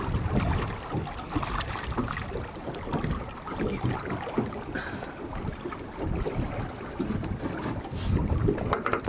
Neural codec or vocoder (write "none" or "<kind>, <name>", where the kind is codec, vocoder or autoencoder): none